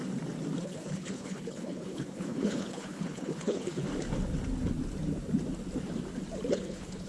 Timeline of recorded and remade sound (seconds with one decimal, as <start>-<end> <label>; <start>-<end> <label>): 0.0-0.6 recorded; 0.6-3.9 remade; 3.9-6.5 recorded; 6.5-7.1 remade